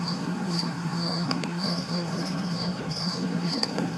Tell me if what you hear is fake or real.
fake